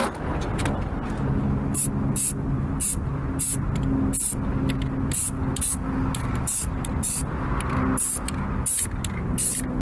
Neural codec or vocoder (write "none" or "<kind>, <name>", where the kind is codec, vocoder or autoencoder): none